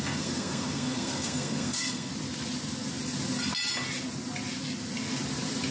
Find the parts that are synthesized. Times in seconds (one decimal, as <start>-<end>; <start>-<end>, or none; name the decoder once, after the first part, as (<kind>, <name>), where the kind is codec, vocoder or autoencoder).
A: 0.0-2.1 (codec, SNAC)